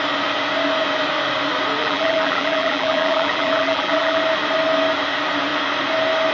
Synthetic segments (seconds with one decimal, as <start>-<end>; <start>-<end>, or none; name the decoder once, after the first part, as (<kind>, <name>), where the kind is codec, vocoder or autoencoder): 1.8-4.2 (vocoder, BigVGAN v2)